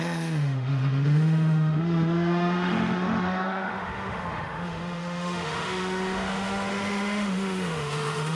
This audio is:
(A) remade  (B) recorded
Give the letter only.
A